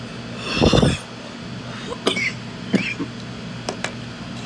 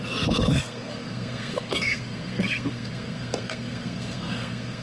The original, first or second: first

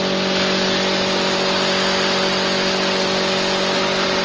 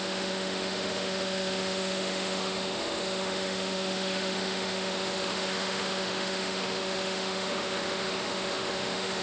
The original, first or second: first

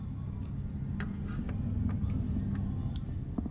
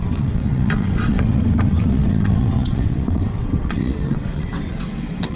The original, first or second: first